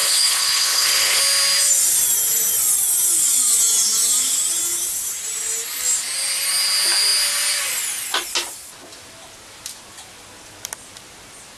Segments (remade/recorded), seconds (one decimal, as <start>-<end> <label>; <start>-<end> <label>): 0.0-1.2 remade; 1.2-11.6 recorded